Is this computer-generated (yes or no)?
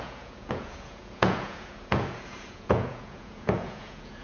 yes